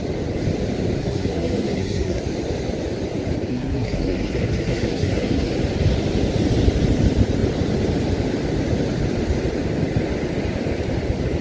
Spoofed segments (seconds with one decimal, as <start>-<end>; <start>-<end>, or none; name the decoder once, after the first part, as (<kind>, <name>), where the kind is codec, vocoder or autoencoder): 1.0-2.2 (codec, SNAC); 3.5-5.5